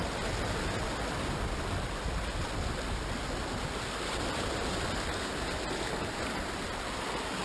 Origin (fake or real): real